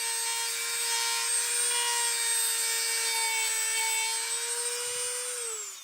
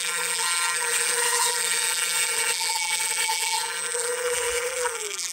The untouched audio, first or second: first